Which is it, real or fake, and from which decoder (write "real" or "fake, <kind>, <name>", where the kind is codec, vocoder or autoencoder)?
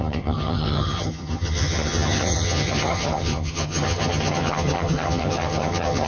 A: fake, vocoder, HiFi-GAN